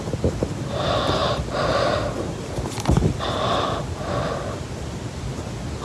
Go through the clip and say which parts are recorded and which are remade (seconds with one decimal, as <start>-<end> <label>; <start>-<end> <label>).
0.0-5.8 recorded